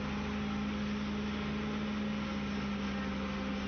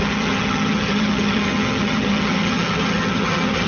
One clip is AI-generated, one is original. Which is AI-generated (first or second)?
second